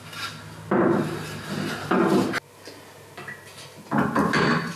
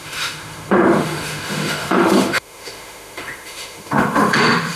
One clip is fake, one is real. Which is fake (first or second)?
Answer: second